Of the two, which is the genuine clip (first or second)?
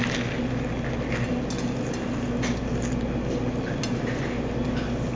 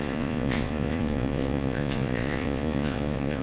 first